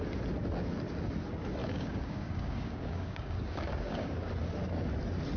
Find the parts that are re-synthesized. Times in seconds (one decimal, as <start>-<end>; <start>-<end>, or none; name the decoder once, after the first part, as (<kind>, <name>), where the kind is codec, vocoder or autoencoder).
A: 1.6-4.3 (codec, DAC)